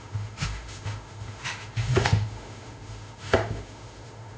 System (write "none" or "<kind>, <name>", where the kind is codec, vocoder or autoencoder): autoencoder, DAC-VAE